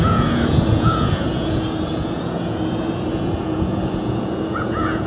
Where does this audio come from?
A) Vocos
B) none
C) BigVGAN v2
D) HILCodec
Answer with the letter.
A